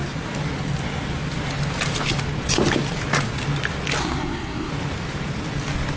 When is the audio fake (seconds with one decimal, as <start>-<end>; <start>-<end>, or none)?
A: 4.0-4.7